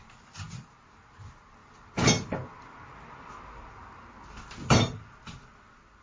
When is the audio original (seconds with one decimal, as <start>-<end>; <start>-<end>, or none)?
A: 0.0-6.0